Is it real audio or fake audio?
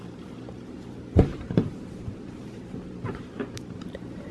fake